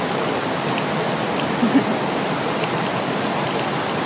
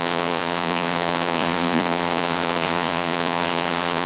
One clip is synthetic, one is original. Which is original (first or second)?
first